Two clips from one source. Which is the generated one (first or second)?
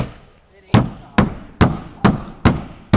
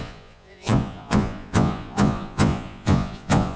second